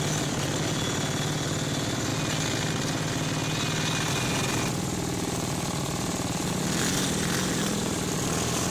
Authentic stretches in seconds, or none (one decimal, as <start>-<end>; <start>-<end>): 0.0-8.7